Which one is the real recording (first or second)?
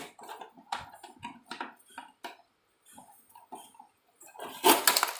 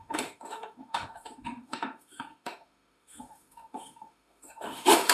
first